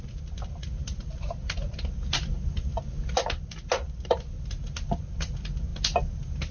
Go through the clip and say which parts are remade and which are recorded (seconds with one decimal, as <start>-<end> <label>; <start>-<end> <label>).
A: 0.0-6.5 recorded